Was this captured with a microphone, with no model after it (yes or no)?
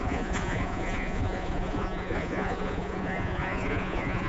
no